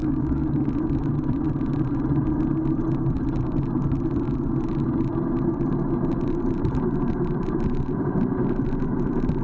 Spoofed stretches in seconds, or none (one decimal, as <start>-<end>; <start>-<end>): 0.0-0.7